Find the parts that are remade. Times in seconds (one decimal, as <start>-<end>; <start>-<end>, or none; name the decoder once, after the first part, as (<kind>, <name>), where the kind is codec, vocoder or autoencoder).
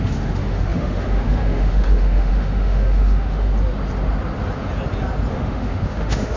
0.0-3.5 (autoencoder, DAC-VAE); 5.3-6.4